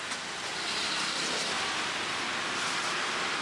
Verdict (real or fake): real